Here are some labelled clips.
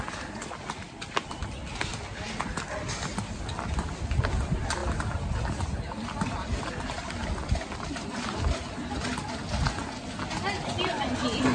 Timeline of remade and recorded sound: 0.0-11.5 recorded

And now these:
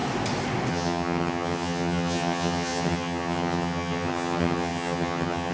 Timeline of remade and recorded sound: 0.0-0.7 recorded; 0.7-5.5 remade